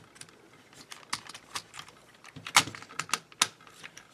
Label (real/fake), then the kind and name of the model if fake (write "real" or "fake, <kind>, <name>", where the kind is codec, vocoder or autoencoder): real